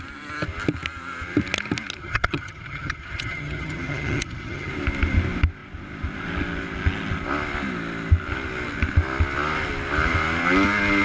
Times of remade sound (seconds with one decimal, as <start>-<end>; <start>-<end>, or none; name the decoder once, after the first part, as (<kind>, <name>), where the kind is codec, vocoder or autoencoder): 2.0-4.7 (vocoder, HiFi-GAN)